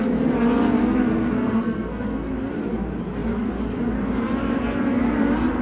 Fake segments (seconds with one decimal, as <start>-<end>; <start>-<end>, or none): 0.8-2.3